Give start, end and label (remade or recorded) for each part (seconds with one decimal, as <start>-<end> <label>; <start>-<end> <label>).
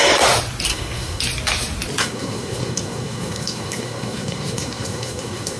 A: 0.0-0.7 recorded; 0.7-1.2 remade; 1.2-2.0 recorded; 2.0-5.6 remade